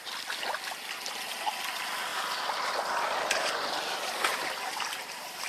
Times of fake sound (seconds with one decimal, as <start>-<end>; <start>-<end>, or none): 4.3-5.5